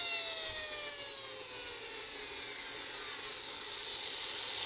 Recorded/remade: recorded